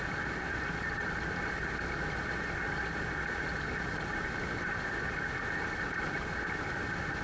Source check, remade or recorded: recorded